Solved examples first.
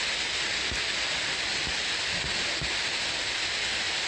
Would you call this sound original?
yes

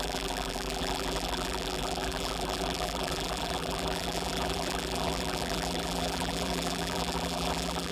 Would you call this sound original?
no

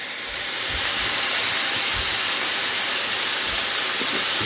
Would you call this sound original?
yes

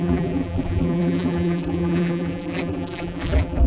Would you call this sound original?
no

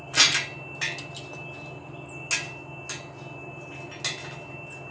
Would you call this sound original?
yes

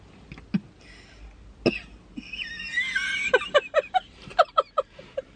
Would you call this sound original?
yes